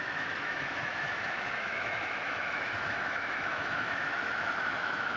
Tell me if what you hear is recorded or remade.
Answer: remade